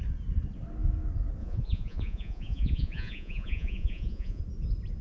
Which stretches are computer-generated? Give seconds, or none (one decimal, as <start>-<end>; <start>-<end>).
1.4-4.4